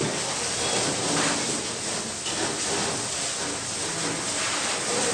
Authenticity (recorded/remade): recorded